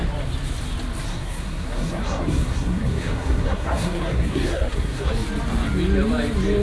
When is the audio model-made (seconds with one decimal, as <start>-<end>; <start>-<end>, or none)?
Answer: 1.1-5.1